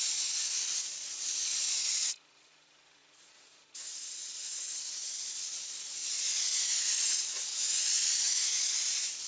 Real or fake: fake